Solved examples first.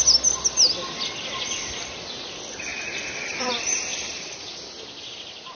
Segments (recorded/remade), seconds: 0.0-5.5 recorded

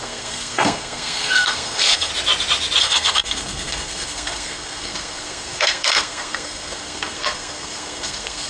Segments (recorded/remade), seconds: 0.0-2.1 remade; 2.1-2.8 recorded; 2.8-8.5 remade